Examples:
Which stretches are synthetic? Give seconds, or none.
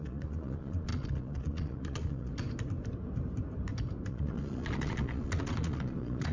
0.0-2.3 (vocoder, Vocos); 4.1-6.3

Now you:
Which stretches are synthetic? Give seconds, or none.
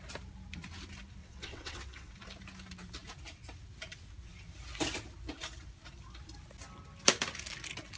1.2-2.1 (vocoder, WaveNeXt)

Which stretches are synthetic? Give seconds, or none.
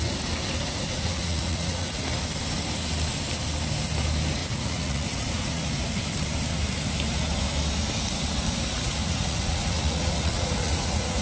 0.9-2.0 (vocoder, Vocos); 4.4-6.0; 8.7-11.2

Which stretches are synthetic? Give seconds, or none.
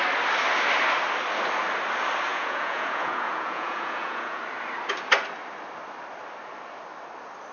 2.3-4.4 (vocoder, Vocos)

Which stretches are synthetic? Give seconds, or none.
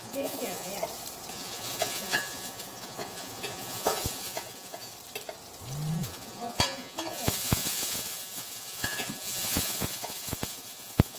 0.0-0.7 (vocoder, Vocos); 1.3-4.9; 5.9-11.2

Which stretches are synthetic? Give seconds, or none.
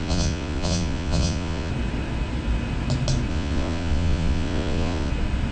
0.0-1.7 (vocoder, Vocos); 3.3-5.1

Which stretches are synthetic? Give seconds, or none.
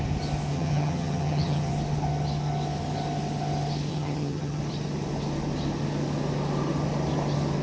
0.5-1.7 (vocoder, HiFi-GAN); 3.9-4.6